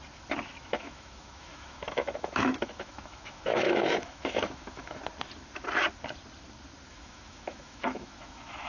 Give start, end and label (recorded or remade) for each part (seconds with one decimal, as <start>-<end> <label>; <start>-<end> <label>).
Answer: 0.0-0.7 recorded; 0.7-5.0 remade; 5.0-6.9 recorded; 6.9-8.7 remade